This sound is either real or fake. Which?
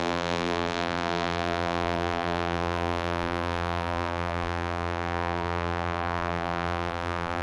fake